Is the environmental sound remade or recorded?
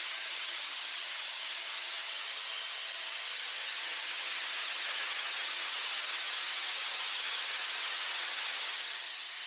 remade